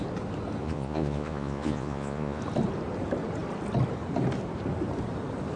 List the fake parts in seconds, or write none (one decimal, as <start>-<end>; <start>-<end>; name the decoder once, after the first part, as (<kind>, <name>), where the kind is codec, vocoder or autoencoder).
0.6-2.4 (vocoder, Vocos)